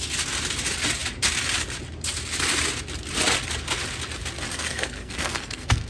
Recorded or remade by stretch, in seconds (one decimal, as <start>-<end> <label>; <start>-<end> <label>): 0.0-4.5 recorded; 4.5-5.9 remade